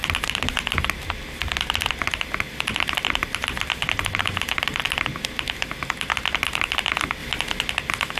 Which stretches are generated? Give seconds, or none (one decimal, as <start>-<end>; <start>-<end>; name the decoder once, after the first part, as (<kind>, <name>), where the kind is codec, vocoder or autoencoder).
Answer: 0.0-0.5 (vocoder, BigVGAN v2); 7.2-7.7